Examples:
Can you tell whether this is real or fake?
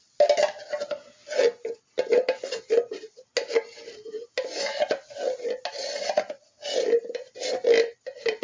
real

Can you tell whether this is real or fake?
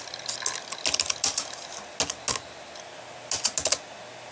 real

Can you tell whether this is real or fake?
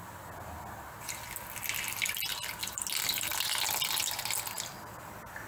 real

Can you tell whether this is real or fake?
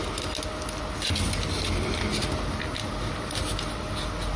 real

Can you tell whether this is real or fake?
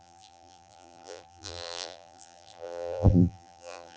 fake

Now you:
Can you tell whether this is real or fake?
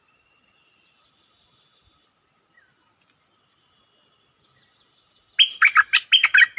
real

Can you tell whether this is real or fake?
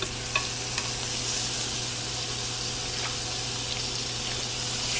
real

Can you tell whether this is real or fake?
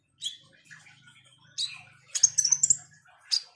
real